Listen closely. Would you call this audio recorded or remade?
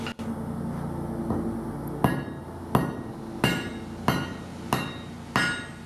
recorded